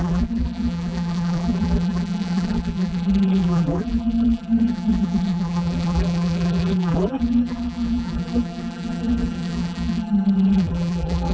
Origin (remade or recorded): remade